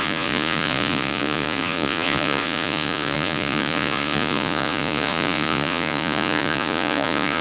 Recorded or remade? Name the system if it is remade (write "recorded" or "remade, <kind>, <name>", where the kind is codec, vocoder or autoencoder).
remade, vocoder, Vocos